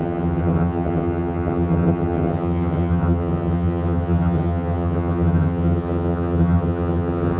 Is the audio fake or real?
fake